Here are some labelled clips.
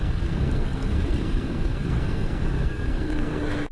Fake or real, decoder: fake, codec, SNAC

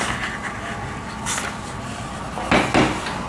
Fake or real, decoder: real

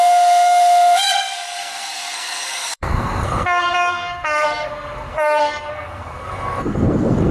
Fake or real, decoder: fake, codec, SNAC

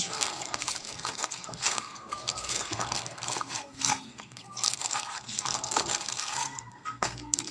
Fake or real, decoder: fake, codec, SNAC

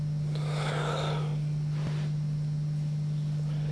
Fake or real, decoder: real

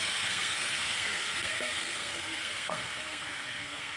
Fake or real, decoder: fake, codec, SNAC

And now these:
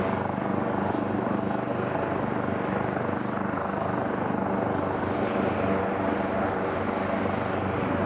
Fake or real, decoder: real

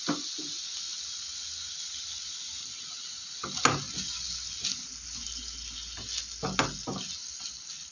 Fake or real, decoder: real